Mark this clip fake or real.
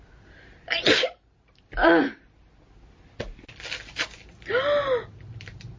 real